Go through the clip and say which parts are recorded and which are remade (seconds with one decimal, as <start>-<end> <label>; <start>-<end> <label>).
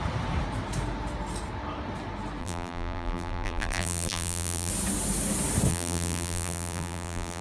0.0-2.4 recorded; 2.4-4.7 remade; 4.7-5.7 recorded; 5.7-7.4 remade